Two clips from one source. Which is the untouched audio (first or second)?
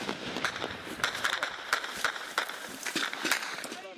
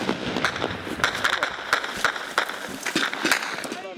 second